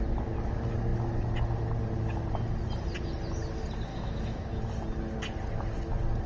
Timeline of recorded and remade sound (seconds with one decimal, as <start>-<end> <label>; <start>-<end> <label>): 0.0-3.9 recorded; 3.9-4.6 remade; 4.6-6.3 recorded